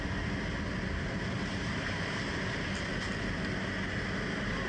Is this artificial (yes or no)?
no